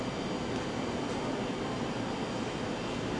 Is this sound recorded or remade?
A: recorded